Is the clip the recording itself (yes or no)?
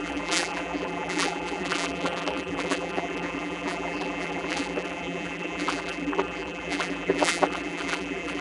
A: no